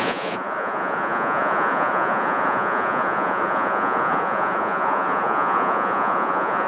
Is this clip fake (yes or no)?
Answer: yes